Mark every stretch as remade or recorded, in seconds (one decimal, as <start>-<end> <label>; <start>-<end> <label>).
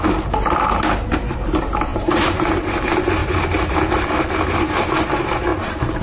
0.0-1.9 recorded; 1.9-2.7 remade; 2.7-3.2 recorded; 3.2-3.9 remade; 3.9-5.5 recorded; 5.5-6.0 remade